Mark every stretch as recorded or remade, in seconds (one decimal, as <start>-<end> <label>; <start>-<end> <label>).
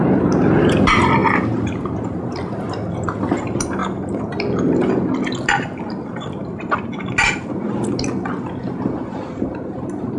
0.0-10.2 recorded